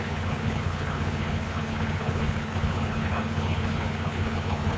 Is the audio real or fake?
fake